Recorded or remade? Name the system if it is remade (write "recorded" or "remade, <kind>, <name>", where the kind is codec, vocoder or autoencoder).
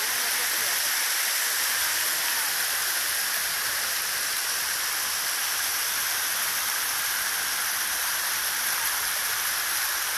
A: recorded